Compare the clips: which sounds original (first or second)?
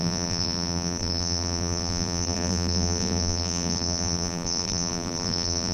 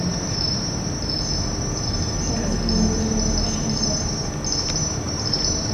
second